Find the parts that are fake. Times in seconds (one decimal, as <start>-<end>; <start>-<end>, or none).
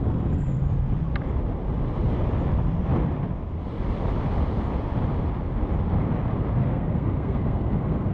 0.0-0.6; 6.6-8.1